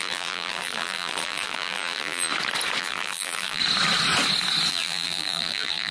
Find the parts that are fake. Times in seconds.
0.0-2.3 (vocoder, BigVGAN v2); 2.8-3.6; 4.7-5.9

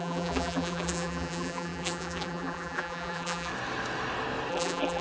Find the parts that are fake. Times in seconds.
0.0-3.5 (vocoder, BigVGAN v2); 4.5-5.0

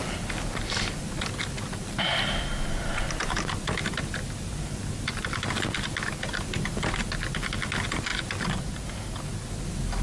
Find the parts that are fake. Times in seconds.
none